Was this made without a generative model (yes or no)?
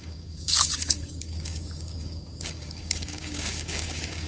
no